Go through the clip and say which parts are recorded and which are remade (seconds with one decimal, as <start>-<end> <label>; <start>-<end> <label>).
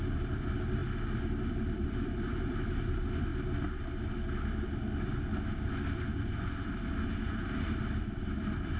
0.0-0.8 remade; 0.8-1.5 recorded; 1.5-3.3 remade; 3.3-8.0 recorded; 8.0-8.8 remade